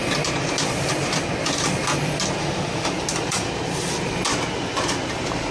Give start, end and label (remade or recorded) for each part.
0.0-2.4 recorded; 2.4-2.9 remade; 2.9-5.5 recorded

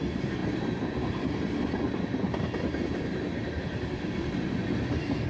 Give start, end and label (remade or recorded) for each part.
0.0-5.3 remade

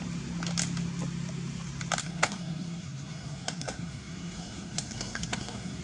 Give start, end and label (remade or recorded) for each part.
0.0-2.0 recorded; 2.0-5.8 remade

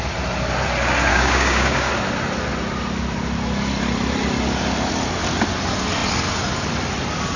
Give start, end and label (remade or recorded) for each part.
0.0-1.1 recorded; 1.1-1.9 remade; 1.9-7.4 recorded

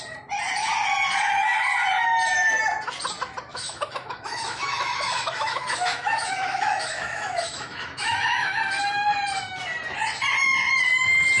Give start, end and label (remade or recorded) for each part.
0.0-3.5 recorded; 3.5-8.6 remade; 8.6-11.4 recorded

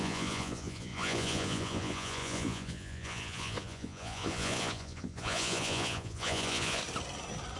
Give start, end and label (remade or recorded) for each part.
0.0-6.8 remade; 6.8-7.6 recorded

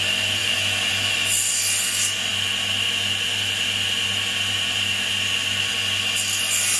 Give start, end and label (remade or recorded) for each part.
0.0-0.4 recorded; 0.4-0.9 remade; 0.9-6.8 recorded

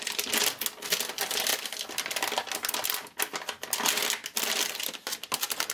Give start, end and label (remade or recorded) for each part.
0.0-5.7 recorded